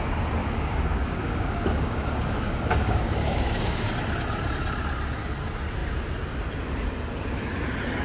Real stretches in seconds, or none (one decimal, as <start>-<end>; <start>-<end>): 0.0-0.4; 3.9-8.0